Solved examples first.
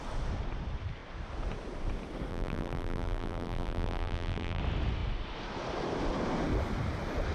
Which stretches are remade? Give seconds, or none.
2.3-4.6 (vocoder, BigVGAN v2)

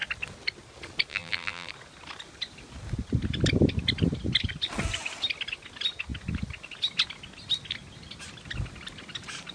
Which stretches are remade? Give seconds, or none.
1.1-1.7 (vocoder, BigVGAN v2)